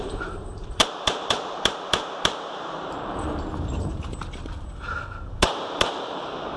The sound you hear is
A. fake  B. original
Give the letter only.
A